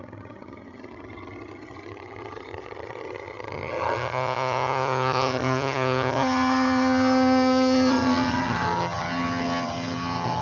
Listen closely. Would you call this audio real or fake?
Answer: fake